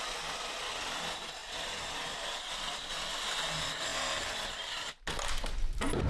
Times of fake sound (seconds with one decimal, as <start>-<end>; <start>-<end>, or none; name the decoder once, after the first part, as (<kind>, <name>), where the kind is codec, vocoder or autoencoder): none